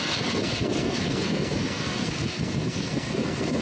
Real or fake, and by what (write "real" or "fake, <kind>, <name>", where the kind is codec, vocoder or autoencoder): fake, codec, SNAC